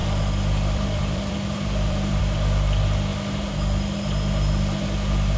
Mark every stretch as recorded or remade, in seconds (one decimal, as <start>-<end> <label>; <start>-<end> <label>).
0.0-2.2 remade; 2.2-5.4 recorded